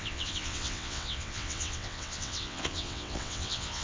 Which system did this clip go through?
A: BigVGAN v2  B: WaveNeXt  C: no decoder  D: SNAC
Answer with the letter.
B